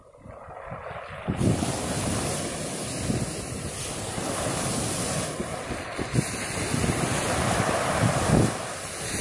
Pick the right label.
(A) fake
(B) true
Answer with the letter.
B